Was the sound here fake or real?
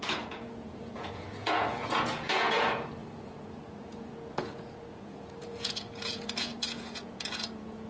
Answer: fake